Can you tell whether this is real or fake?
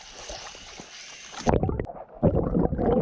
real